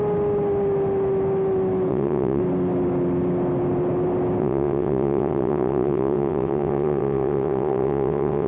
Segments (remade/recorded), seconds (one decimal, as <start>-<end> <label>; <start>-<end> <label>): 0.0-1.9 recorded; 1.9-2.4 remade; 2.4-4.4 recorded; 4.4-8.5 remade